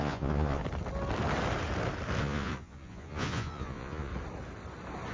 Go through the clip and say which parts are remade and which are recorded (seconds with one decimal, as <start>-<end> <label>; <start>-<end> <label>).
0.0-0.6 remade; 0.6-2.2 recorded; 2.2-4.1 remade; 4.1-5.1 recorded